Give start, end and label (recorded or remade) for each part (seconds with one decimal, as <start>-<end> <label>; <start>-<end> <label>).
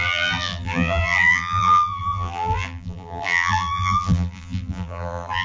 0.0-5.4 remade